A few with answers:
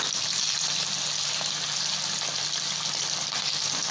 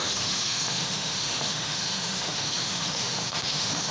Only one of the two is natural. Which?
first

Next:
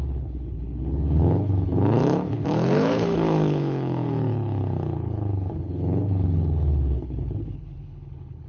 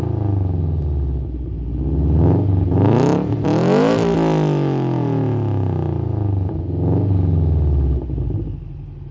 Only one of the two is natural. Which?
second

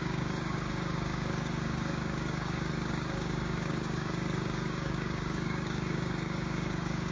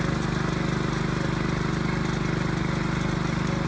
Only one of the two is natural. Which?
second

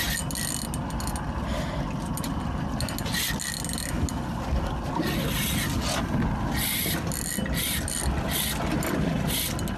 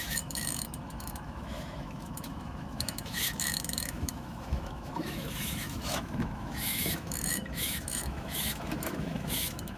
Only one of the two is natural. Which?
first